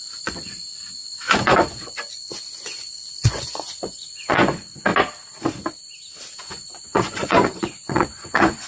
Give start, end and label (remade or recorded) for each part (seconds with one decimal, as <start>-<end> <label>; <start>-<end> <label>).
0.0-4.9 remade; 4.9-6.4 recorded; 6.4-8.7 remade